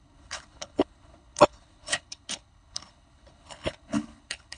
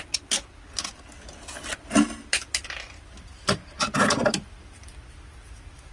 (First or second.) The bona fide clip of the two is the second